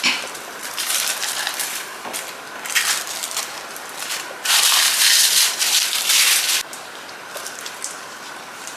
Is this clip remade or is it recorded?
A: remade